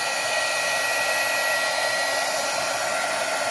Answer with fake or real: real